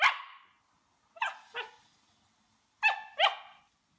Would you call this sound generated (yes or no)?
no